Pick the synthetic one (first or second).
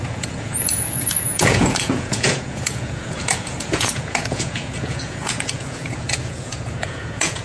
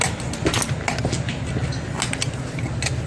first